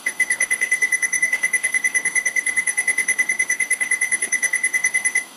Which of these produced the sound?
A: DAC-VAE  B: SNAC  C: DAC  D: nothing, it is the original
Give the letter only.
C